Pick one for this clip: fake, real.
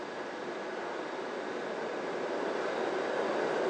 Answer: real